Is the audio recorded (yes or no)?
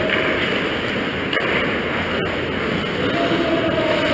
yes